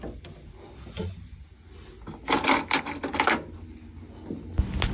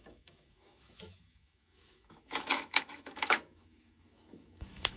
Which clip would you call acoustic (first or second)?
first